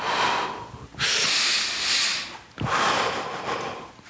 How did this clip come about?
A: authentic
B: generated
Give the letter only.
A